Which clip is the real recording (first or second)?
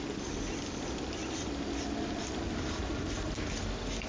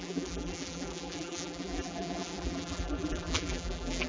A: first